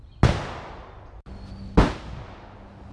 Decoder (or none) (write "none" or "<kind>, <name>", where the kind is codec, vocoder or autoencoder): none